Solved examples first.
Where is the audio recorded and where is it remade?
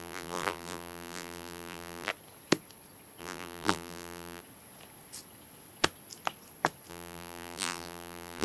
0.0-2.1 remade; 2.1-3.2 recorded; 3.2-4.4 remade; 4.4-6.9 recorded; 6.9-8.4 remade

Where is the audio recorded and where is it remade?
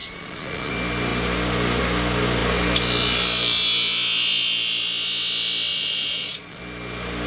0.0-0.7 remade; 0.7-5.7 recorded; 5.7-6.6 remade; 6.6-7.3 recorded